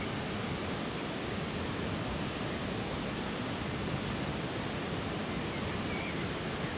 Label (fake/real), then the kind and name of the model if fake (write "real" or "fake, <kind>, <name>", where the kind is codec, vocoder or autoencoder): real